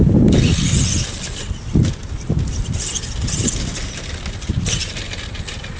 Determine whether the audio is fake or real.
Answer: real